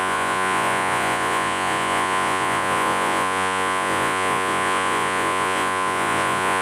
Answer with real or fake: fake